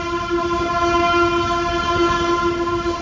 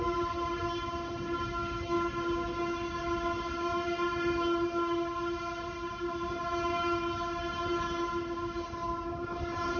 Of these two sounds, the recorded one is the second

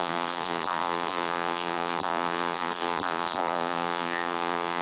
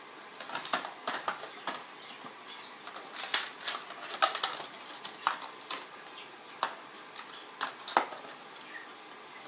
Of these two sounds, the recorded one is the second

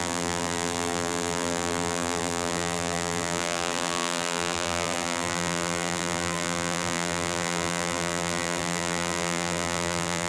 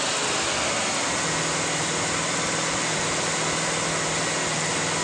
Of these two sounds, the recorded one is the second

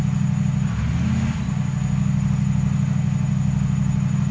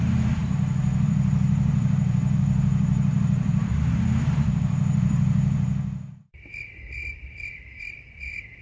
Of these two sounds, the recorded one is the first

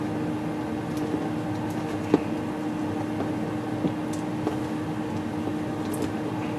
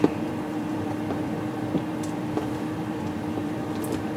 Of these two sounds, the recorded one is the first